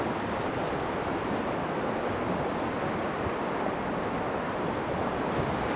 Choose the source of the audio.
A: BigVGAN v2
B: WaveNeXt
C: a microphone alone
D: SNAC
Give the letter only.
C